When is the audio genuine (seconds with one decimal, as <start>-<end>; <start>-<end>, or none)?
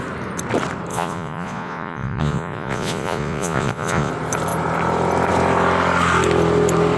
0.0-0.9; 4.1-7.0